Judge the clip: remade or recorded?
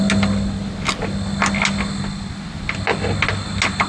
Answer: recorded